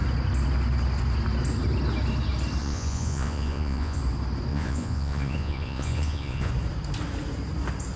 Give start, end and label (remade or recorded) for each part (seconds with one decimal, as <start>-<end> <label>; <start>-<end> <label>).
0.0-2.6 recorded; 2.6-4.0 remade; 4.0-4.5 recorded; 4.5-6.5 remade; 6.5-8.0 recorded

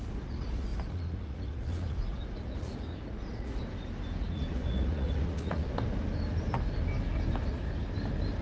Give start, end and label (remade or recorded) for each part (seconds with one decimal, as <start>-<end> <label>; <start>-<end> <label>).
0.0-3.6 remade; 3.6-4.2 recorded; 4.2-5.7 remade; 5.7-8.4 recorded

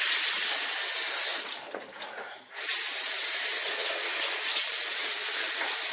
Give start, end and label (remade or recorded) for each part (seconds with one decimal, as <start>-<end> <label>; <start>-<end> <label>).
0.0-1.3 recorded; 1.3-2.4 remade; 2.4-3.5 recorded; 3.5-5.9 remade

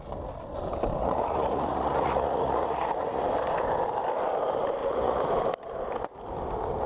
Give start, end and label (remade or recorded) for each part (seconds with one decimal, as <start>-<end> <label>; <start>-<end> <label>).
0.0-1.0 recorded; 1.0-3.2 remade; 3.2-4.8 recorded; 4.8-5.3 remade; 5.3-6.9 recorded

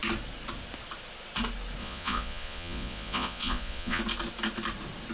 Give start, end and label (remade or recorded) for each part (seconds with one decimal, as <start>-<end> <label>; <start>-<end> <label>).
0.0-1.8 recorded; 1.8-4.0 remade; 4.0-5.1 recorded

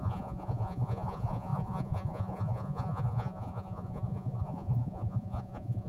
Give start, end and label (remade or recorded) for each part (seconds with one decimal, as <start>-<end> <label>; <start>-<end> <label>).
0.0-5.9 remade